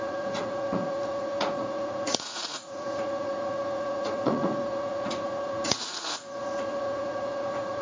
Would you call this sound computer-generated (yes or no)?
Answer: yes